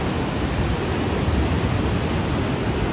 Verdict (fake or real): real